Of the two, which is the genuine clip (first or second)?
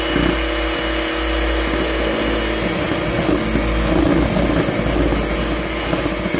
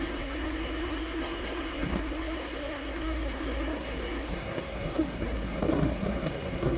first